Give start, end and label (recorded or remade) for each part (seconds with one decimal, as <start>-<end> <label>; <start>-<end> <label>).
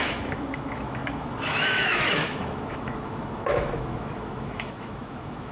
0.0-5.5 remade